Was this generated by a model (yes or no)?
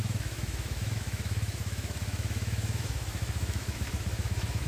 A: yes